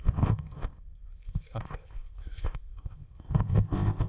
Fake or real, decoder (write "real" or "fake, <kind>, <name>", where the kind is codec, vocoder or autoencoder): fake, codec, ZipCodec